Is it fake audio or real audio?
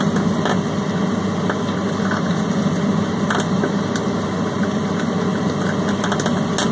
real